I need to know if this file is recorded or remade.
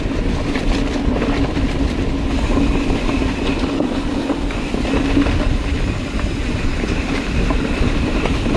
recorded